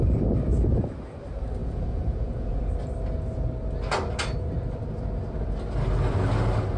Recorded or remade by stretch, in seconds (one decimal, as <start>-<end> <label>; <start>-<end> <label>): 0.0-1.6 recorded; 1.6-2.6 remade; 2.6-6.8 recorded